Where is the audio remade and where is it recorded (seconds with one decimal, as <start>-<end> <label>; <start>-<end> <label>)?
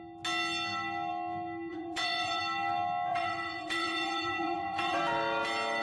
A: 0.0-1.7 recorded; 1.7-2.4 remade; 2.4-3.1 recorded; 3.1-5.0 remade; 5.0-5.8 recorded